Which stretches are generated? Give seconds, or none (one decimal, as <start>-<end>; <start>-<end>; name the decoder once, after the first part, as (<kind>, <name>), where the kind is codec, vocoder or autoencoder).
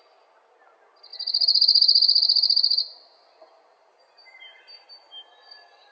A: 1.1-4.6 (vocoder, BigVGAN v2)